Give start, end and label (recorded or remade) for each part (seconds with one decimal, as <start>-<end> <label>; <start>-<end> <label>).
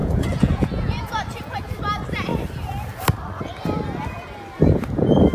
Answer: 0.0-1.8 remade; 1.8-5.3 recorded